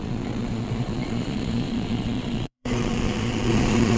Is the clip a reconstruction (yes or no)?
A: yes